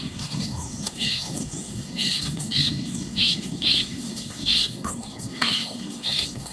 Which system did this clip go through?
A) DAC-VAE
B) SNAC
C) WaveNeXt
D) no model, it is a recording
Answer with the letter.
B